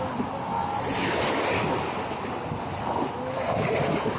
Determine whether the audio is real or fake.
real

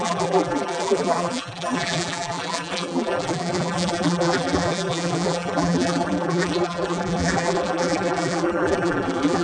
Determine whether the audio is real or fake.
fake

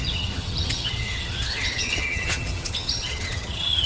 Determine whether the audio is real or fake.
fake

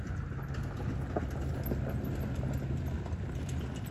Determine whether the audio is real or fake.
real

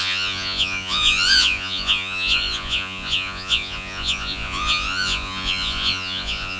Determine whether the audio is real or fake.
fake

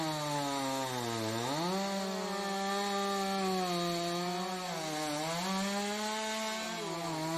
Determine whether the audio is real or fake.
real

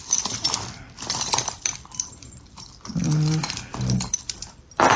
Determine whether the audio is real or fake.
fake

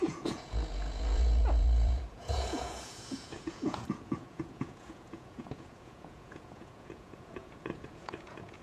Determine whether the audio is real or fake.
fake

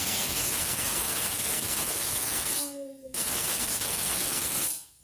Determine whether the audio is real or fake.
fake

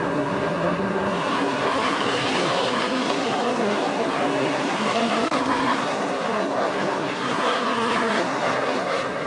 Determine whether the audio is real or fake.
fake